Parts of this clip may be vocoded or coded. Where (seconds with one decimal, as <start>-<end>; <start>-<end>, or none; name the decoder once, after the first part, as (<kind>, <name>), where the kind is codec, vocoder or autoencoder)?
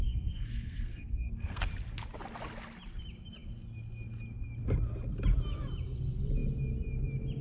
0.0-1.7 (codec, SNAC)